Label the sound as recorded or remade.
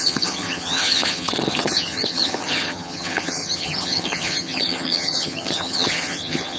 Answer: remade